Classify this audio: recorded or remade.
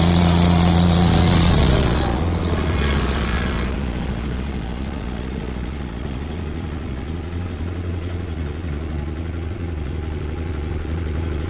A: remade